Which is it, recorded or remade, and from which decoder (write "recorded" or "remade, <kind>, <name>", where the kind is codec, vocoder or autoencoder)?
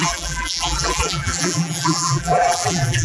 remade, vocoder, BigVGAN v2